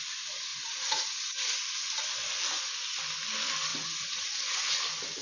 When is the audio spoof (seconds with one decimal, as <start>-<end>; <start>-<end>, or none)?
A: 0.5-1.5; 3.7-4.8